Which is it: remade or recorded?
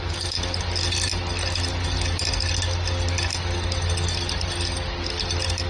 recorded